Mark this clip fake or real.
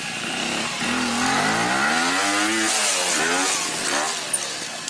real